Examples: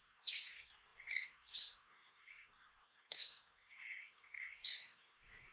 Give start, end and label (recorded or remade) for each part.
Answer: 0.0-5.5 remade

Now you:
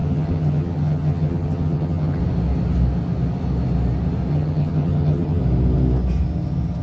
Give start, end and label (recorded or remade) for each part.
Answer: 0.0-2.2 remade; 2.2-4.3 recorded; 4.3-5.4 remade; 5.4-6.8 recorded

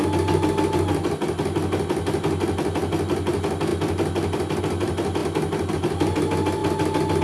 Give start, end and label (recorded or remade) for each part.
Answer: 0.0-7.2 recorded